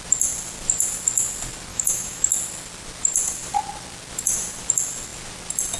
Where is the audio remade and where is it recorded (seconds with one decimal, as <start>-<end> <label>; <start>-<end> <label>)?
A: 0.0-1.7 recorded; 1.7-2.3 remade; 2.3-5.8 recorded

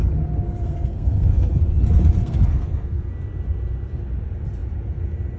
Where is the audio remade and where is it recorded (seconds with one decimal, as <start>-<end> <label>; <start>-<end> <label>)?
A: 0.0-0.6 recorded; 0.6-1.6 remade; 1.6-2.2 recorded; 2.2-3.1 remade; 3.1-5.4 recorded

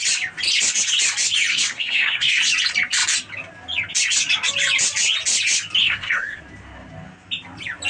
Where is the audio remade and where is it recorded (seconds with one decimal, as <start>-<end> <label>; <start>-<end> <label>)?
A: 0.0-1.5 recorded; 1.5-2.4 remade; 2.4-5.8 recorded; 5.8-6.4 remade; 6.4-7.9 recorded

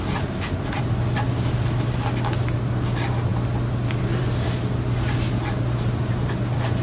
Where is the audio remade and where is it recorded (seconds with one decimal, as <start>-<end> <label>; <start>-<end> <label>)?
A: 0.0-6.8 recorded

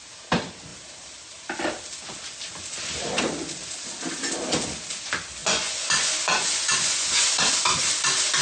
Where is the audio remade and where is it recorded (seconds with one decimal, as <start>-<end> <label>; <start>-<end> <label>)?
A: 0.0-5.4 recorded; 5.4-7.3 remade; 7.3-8.4 recorded

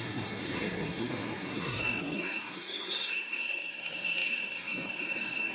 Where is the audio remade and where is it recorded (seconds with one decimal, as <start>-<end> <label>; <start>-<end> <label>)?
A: 0.0-5.5 remade

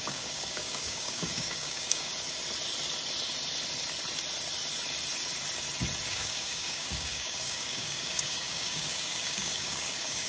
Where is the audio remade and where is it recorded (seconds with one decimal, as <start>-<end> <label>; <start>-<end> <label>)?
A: 0.0-2.1 remade; 2.1-6.1 recorded; 6.1-10.3 remade

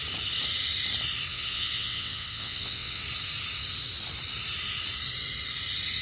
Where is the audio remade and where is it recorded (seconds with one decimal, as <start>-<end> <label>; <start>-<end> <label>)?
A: 0.0-1.3 recorded; 1.3-3.0 remade; 3.0-6.0 recorded